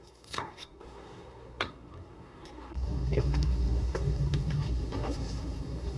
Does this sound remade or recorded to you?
remade